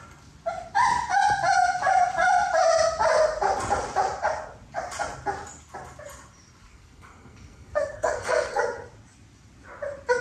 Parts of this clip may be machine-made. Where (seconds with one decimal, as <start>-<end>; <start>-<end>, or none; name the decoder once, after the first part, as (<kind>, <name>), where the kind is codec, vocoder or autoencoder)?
6.7-8.6 (codec, SNAC)